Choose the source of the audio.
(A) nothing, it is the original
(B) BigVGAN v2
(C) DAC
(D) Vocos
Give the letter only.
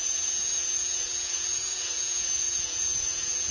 D